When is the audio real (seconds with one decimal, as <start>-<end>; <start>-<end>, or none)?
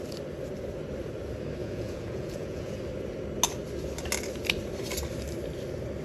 0.0-1.6; 2.8-6.0